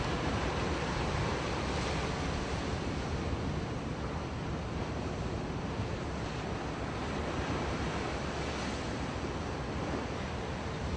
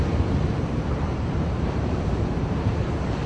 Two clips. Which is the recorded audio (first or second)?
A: first